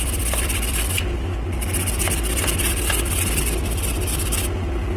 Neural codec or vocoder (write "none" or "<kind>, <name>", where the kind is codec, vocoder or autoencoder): none